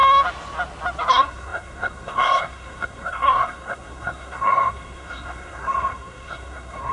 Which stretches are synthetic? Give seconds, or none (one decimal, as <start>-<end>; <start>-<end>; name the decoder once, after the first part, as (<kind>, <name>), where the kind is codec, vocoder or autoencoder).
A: 1.1-6.9 (codec, SNAC)